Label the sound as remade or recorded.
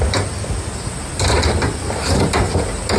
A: recorded